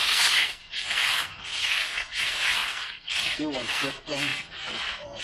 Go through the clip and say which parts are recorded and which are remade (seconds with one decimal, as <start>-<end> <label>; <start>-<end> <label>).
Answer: 0.0-5.2 remade